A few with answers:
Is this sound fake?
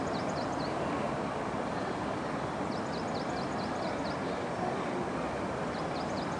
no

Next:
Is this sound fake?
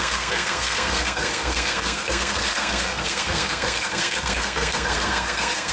yes